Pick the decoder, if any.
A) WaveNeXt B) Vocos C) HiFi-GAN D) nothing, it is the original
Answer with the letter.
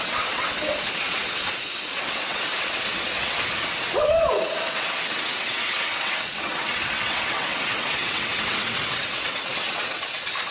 A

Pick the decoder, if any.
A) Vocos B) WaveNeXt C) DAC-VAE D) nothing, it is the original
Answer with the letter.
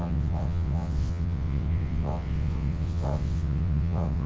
B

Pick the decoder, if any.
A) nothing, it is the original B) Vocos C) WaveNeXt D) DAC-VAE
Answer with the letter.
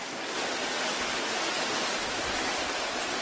A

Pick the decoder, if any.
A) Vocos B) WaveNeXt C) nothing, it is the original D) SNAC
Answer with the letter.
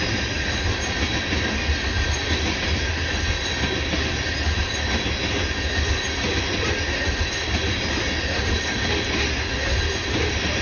C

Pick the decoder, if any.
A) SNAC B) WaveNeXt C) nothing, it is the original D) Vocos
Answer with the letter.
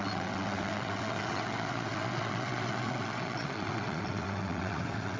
B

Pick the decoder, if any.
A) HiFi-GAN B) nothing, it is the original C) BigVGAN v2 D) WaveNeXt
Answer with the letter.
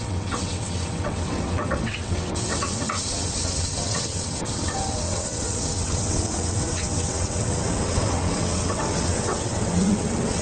D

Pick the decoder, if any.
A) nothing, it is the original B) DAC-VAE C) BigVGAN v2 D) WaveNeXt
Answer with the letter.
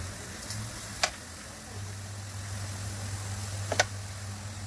A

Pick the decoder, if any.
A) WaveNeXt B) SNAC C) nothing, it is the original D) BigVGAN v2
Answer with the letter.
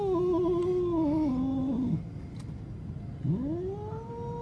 C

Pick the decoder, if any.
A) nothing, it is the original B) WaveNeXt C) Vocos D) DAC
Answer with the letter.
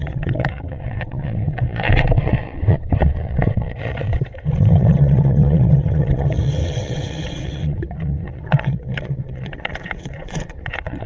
B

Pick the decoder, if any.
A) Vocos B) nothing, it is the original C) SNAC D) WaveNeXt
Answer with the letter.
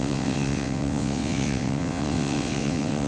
D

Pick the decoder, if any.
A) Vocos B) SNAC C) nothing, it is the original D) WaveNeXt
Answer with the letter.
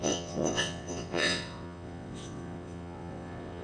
D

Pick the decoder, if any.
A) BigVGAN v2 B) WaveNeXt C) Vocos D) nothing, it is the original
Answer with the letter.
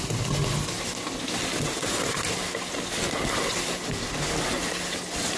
D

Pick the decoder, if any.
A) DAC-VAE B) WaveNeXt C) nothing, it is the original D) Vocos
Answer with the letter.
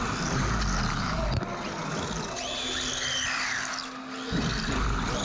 C